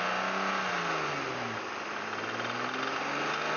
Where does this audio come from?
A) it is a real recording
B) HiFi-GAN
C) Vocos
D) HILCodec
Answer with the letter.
A